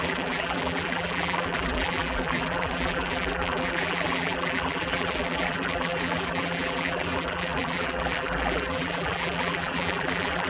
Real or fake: fake